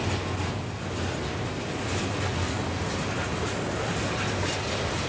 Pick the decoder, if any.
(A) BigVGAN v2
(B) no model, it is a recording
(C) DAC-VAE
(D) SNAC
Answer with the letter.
B